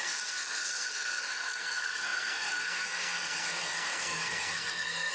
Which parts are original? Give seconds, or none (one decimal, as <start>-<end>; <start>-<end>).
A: none